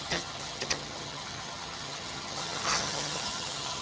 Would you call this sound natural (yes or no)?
no